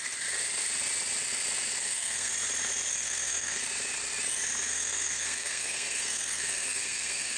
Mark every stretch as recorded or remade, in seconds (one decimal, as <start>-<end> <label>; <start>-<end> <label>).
0.0-1.8 recorded; 1.8-2.3 remade; 2.3-2.9 recorded; 2.9-3.6 remade; 3.6-4.7 recorded; 4.7-7.4 remade